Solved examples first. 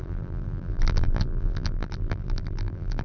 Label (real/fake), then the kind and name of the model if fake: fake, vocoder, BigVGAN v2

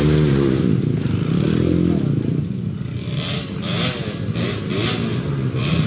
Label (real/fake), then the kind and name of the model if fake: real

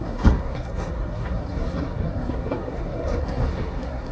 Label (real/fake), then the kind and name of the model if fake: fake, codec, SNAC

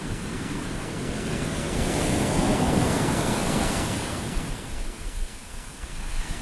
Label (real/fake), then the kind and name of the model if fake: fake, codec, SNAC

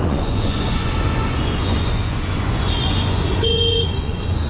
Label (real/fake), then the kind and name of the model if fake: fake, vocoder, Vocos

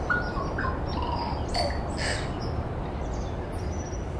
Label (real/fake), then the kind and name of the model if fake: real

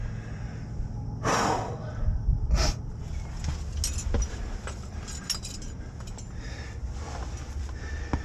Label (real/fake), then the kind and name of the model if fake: real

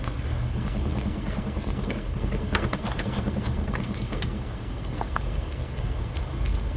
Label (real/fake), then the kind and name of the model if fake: fake, codec, SNAC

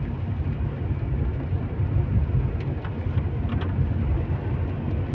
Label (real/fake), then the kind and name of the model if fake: real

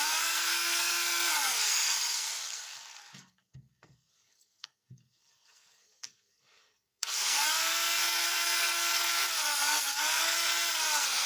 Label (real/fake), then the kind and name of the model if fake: fake, codec, SNAC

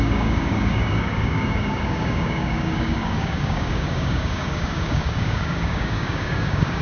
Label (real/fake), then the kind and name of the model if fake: fake, codec, DAC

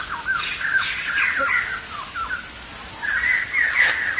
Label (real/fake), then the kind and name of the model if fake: real